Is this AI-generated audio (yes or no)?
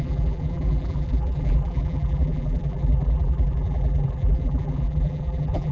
yes